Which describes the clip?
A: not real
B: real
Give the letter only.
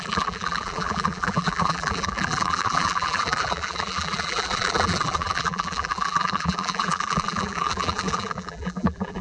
A